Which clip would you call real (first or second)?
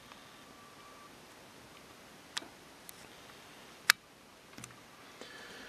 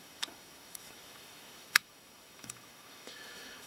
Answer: first